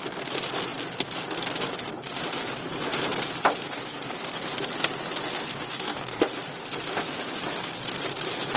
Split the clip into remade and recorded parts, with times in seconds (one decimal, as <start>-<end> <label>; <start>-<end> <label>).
0.0-5.5 recorded; 5.5-6.2 remade; 6.2-8.6 recorded